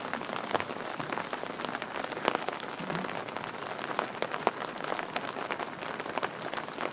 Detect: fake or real real